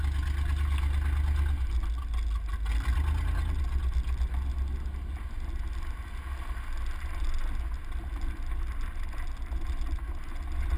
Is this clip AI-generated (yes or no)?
no